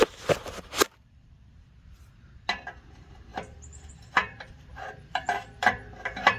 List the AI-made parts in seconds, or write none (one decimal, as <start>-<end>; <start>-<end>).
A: 0.0-6.4